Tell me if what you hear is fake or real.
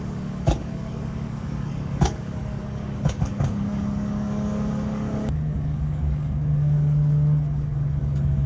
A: fake